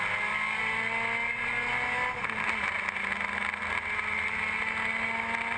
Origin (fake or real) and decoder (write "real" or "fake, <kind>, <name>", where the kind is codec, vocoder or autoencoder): real